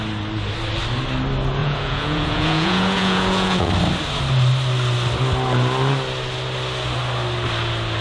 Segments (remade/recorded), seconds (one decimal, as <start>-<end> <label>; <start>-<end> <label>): 0.0-1.6 recorded; 1.6-3.7 remade; 3.7-8.0 recorded